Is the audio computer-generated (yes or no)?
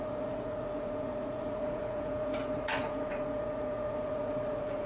yes